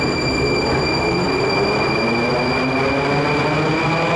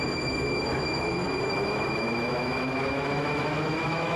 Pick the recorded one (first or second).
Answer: first